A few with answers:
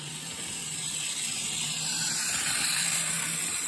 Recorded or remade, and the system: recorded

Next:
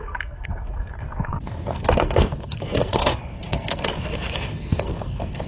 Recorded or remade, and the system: remade, codec, SNAC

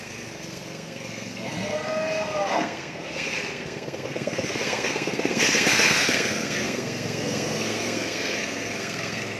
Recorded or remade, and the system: remade, codec, SNAC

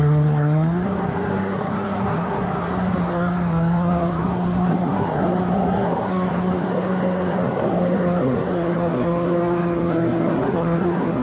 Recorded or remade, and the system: remade, codec, SNAC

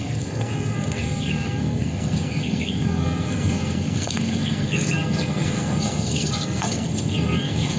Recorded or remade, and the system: remade, codec, SNAC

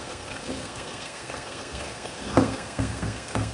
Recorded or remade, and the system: remade, codec, SNAC